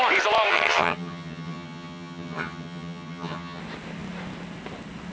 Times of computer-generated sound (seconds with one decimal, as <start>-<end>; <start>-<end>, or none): 0.5-3.6

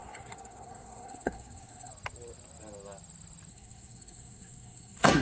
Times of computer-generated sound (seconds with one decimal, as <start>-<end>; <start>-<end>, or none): 0.0-1.9; 3.5-5.2

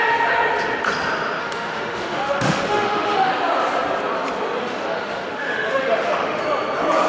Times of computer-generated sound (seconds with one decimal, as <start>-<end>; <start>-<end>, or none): 1.4-3.3; 4.6-6.4